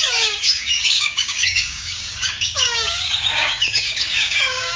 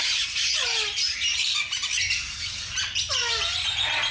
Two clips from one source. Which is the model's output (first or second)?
first